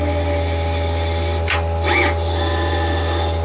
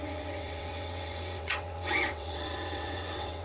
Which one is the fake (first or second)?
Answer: second